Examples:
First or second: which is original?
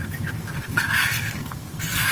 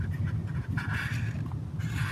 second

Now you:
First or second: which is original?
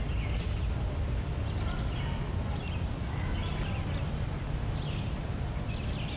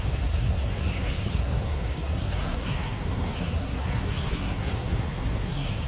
first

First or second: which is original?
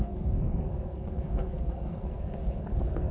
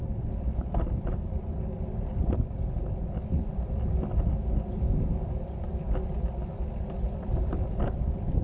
second